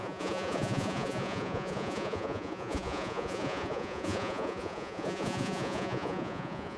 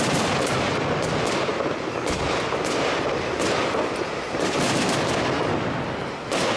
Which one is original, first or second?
second